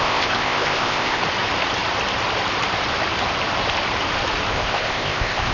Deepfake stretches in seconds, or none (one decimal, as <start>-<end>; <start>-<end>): 0.0-1.2; 4.5-5.5